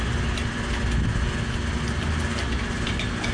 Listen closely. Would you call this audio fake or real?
real